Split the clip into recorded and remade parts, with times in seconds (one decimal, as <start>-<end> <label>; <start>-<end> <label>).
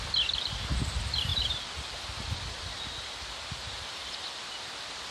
0.0-1.3 recorded; 1.3-4.4 remade; 4.4-5.1 recorded